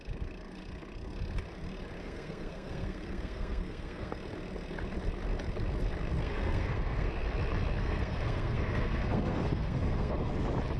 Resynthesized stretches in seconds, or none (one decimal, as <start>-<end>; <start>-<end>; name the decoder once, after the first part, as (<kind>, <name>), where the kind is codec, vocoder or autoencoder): 2.0-4.1 (codec, SNAC); 6.2-7.1; 7.8-10.3

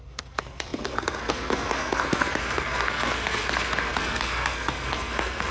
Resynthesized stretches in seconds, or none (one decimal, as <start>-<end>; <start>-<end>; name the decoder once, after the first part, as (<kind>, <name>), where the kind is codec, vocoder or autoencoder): 0.0-5.5 (codec, SNAC)

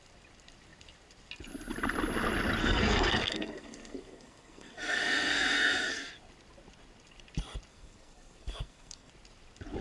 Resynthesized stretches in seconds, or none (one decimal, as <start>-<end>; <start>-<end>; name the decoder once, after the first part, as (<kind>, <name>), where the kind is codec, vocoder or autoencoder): 2.6-6.1 (codec, SNAC); 7.7-9.1

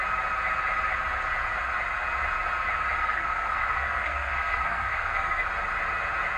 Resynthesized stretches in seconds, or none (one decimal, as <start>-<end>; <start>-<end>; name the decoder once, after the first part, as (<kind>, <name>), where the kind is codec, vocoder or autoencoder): 3.0-5.5 (codec, SNAC)